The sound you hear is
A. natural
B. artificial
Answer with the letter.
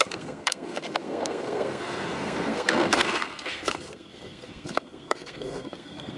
B